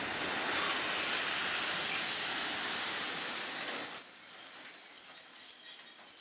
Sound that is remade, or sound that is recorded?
recorded